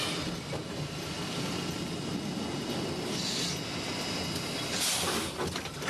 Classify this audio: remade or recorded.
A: recorded